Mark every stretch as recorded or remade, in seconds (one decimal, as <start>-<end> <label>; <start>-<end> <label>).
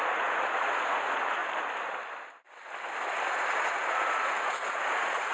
0.0-1.4 remade; 1.4-3.3 recorded; 3.3-5.3 remade